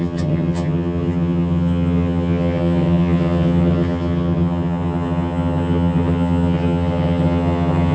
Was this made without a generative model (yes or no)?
no